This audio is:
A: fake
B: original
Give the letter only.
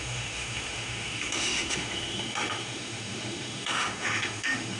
A